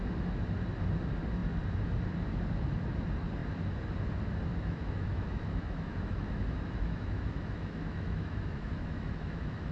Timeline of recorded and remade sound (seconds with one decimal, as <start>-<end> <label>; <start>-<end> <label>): 0.0-4.5 recorded; 4.5-9.7 remade